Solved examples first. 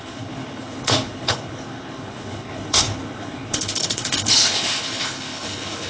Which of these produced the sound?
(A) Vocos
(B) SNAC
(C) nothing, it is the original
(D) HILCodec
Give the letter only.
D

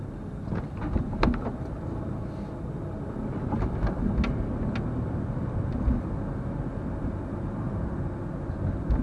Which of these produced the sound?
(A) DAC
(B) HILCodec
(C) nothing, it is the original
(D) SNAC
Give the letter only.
C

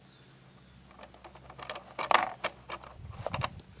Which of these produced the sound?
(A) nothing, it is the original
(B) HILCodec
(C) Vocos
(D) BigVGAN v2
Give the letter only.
A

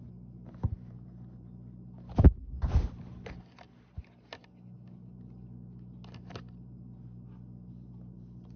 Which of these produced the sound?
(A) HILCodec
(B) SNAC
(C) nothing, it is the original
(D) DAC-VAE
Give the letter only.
C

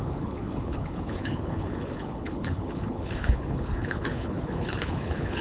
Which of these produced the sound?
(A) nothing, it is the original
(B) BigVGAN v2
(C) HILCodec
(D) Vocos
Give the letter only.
C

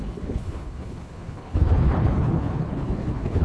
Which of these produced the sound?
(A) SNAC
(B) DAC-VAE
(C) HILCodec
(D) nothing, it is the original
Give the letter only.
C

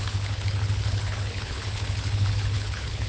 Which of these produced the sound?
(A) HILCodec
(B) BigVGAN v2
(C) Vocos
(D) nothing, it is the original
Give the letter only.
A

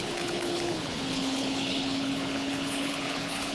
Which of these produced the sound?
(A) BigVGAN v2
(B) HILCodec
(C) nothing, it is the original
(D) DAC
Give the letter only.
B